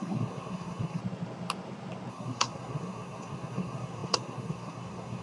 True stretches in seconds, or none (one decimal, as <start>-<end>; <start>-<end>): 1.0-2.1